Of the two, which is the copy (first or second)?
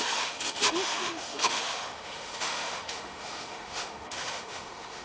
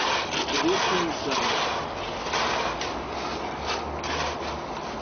first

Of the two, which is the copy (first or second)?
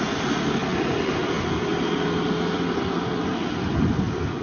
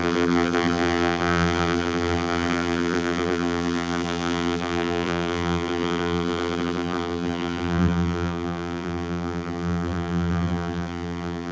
second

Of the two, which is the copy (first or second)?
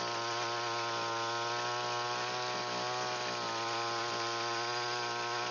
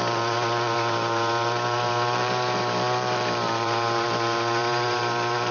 second